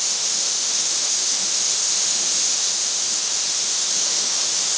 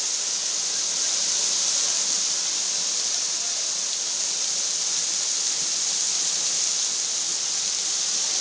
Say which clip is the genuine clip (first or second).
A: second